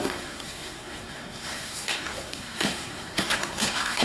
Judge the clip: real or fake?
fake